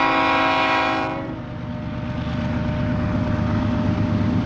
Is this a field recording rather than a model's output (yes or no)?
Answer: yes